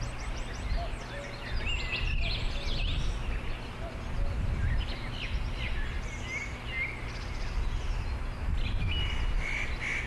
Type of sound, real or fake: real